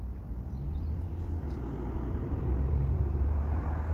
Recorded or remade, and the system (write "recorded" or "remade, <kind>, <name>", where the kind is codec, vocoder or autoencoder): recorded